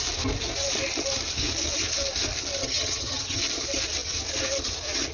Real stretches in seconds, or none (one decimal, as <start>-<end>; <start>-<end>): 0.0-2.6; 3.4-5.1